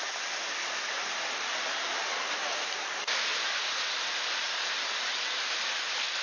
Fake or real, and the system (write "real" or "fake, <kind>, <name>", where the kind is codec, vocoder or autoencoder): real